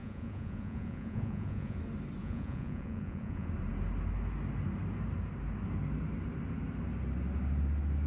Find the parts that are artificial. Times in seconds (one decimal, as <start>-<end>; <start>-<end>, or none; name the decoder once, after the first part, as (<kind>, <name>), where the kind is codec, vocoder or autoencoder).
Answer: 0.0-1.8 (vocoder, Vocos); 2.2-3.5

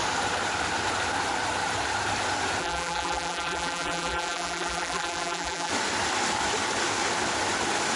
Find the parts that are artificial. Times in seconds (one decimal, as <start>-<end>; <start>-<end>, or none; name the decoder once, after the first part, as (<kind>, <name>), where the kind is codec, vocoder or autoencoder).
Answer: 2.6-5.7 (vocoder, BigVGAN v2)

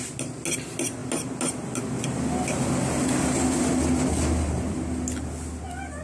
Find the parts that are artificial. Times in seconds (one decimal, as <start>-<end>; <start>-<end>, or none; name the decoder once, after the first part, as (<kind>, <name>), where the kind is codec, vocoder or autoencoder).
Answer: none